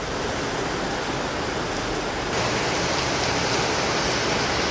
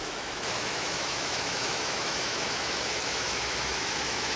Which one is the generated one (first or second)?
second